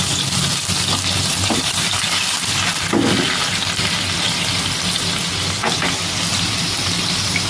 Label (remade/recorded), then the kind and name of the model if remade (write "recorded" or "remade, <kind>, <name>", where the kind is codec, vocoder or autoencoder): recorded